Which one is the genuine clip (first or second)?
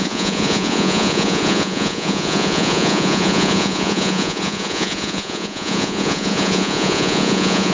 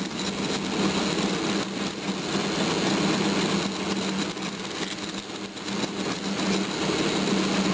second